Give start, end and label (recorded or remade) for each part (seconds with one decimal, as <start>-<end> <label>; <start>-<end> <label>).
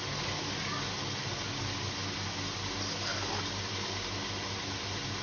0.0-5.2 recorded